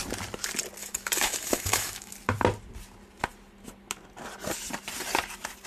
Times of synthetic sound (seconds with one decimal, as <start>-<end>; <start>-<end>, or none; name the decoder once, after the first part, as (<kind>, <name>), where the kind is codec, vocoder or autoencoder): 0.8-2.1 (autoencoder, DAC-VAE)